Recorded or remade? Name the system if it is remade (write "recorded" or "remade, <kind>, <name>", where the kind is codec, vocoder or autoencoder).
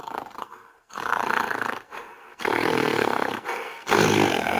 remade, codec, SNAC